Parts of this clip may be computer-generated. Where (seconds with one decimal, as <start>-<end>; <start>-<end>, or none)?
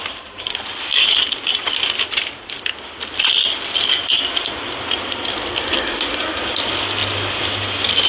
none